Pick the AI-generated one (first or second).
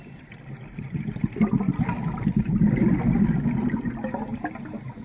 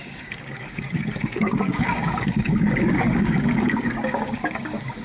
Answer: second